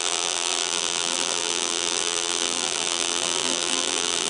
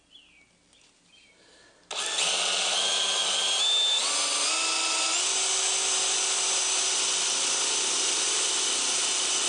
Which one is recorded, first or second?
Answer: second